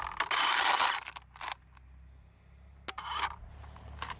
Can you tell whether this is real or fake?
real